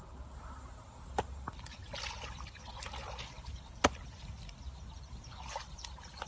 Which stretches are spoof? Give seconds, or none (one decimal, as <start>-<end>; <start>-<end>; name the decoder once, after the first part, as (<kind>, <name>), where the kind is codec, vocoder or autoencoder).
none

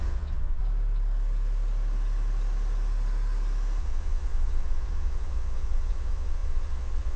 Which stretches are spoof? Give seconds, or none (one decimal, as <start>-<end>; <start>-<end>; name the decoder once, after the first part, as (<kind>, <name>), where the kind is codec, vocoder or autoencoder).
0.0-0.6 (vocoder, Vocos); 3.8-7.2

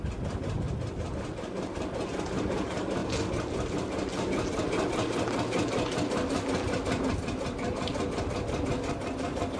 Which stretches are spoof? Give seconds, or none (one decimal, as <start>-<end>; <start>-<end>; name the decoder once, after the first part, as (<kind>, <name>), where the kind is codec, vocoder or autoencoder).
none

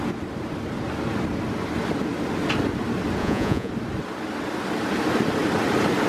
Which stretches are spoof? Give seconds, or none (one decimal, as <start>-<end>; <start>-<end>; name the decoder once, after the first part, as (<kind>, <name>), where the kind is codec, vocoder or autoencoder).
3.2-3.7 (vocoder, Vocos)

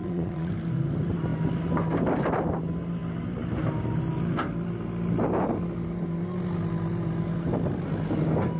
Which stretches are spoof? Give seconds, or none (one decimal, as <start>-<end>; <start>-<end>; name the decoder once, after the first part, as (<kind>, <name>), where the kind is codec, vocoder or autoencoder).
0.0-0.5 (vocoder, Vocos)

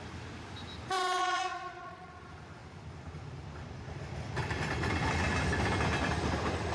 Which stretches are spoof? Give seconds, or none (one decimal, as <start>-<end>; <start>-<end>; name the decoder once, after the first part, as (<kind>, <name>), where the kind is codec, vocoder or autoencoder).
1.2-2.1 (vocoder, Vocos)

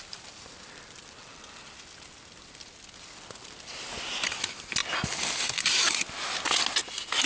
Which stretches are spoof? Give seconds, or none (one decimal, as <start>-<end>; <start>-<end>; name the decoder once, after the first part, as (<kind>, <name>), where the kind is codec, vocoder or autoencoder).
none

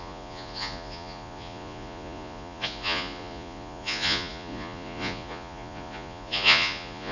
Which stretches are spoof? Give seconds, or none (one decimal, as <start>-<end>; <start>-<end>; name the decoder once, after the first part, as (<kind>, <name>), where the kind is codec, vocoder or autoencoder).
0.0-7.1 (vocoder, Vocos)